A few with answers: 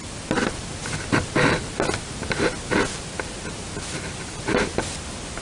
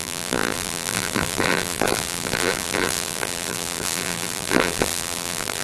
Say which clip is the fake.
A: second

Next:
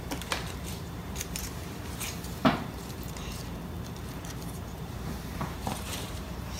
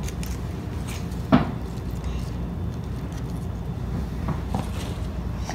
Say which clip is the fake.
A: first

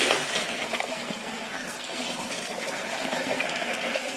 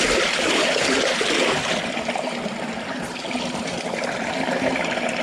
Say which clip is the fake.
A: first